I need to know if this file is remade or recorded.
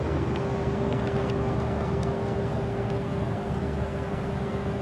remade